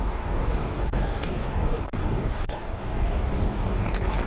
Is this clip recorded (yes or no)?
no